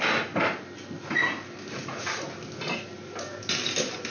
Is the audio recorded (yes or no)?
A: yes